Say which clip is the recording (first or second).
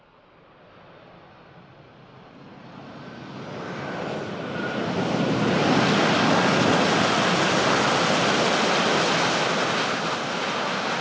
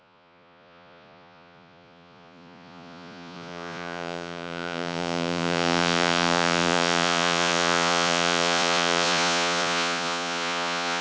first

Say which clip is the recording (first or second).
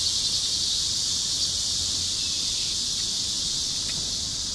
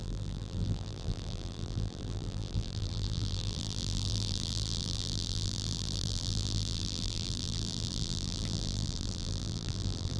first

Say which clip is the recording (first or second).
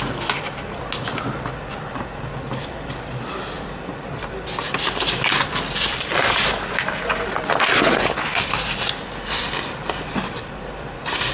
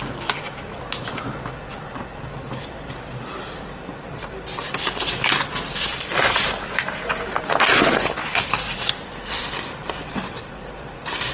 first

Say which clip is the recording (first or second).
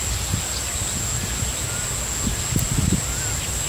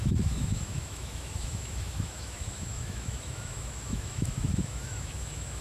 first